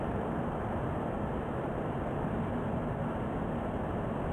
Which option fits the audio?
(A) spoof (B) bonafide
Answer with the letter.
B